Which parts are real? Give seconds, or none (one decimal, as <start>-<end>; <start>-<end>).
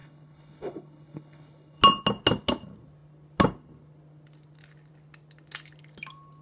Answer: 1.8-6.4